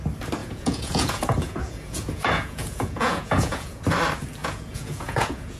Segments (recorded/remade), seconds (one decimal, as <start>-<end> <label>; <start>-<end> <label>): 0.0-0.4 recorded; 0.4-3.8 remade; 3.8-4.4 recorded; 4.4-5.6 remade